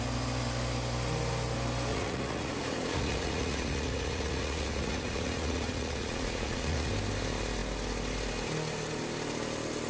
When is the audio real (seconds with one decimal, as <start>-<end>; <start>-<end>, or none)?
0.0-1.9; 6.9-9.9